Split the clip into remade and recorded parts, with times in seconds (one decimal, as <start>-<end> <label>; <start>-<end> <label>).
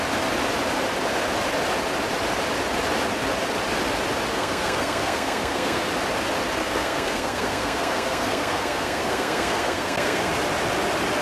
0.0-4.3 recorded; 4.3-5.9 remade; 5.9-6.6 recorded; 6.6-10.3 remade; 10.3-11.2 recorded